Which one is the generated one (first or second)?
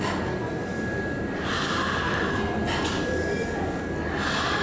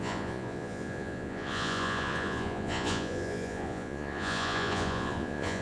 second